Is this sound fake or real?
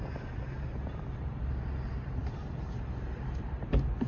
fake